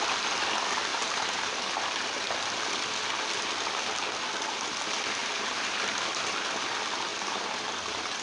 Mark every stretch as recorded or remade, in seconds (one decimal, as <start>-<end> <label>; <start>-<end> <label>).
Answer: 0.0-0.9 recorded; 0.9-1.6 remade; 1.6-5.2 recorded; 5.2-6.3 remade; 6.3-7.1 recorded; 7.1-7.6 remade; 7.6-8.2 recorded